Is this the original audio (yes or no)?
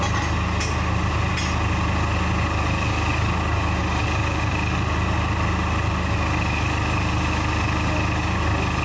yes